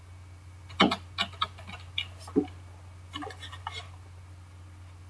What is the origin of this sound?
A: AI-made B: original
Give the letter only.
B